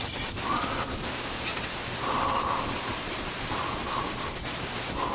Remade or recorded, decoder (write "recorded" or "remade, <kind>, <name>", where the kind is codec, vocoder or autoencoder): remade, vocoder, BigVGAN v2